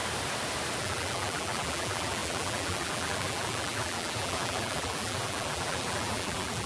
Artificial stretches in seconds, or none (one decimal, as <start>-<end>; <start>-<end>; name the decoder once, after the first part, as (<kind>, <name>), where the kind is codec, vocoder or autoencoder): 0.8-6.7 (vocoder, BigVGAN v2)